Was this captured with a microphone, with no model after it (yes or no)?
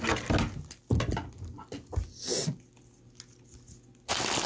yes